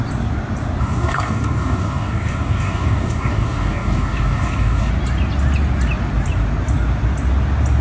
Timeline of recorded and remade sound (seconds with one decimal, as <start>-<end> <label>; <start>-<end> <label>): 0.0-0.8 recorded; 0.8-4.9 remade; 4.9-7.8 recorded